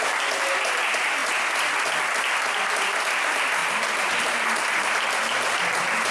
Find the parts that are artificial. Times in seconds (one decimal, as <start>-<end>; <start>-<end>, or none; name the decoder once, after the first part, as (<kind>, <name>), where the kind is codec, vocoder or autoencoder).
3.6-4.7 (vocoder, BigVGAN v2)